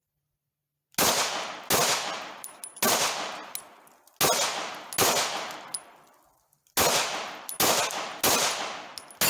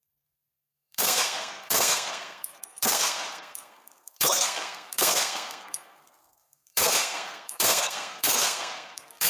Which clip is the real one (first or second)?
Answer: first